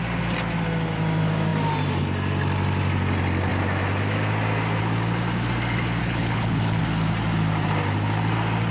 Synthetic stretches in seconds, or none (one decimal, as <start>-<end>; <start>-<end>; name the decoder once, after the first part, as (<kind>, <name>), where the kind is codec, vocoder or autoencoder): 6.0-6.8 (codec, HILCodec)